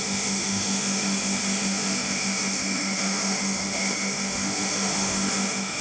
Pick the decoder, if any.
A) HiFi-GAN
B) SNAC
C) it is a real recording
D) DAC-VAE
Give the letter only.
D